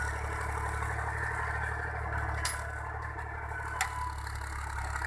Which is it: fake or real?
real